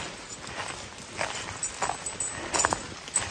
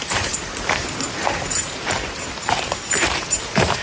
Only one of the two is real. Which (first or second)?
first